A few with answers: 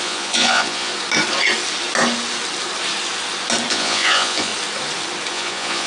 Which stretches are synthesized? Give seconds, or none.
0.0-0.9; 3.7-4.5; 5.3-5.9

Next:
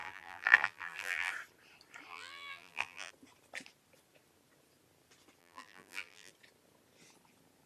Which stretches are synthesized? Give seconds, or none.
0.0-1.3; 2.1-3.1; 5.4-6.3

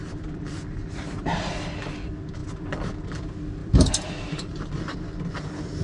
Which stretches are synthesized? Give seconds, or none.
0.0-2.0; 2.4-2.9; 3.6-4.7

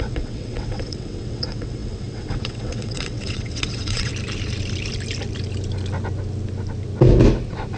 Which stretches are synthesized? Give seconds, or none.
0.0-4.1

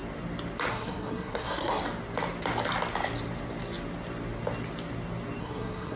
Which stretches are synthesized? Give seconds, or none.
0.7-1.8; 5.4-6.0

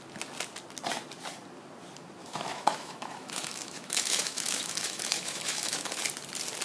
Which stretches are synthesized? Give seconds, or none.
2.2-6.0

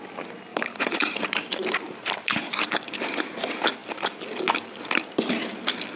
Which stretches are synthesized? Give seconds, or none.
0.5-2.2